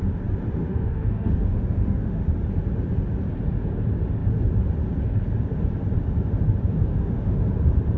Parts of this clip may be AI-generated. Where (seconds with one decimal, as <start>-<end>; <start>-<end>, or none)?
0.6-2.2; 6.9-7.5